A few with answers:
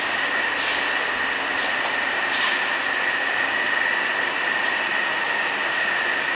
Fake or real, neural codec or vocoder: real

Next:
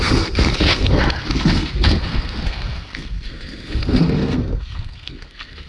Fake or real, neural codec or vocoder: fake, codec, SNAC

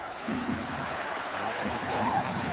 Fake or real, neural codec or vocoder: fake, codec, HILCodec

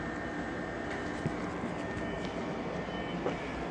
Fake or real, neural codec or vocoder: real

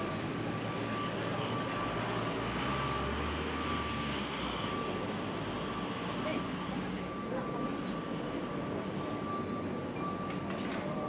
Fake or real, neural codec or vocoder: real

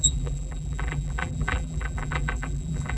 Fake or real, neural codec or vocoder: fake, vocoder, BigVGAN v2